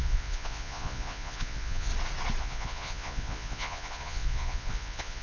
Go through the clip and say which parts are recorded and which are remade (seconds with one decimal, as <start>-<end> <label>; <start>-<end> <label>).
0.0-1.9 remade; 1.9-2.4 recorded; 2.4-5.2 remade